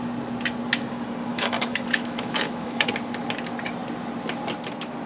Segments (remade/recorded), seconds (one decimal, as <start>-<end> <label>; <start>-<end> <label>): 0.0-1.3 recorded; 1.3-2.9 remade; 2.9-5.1 recorded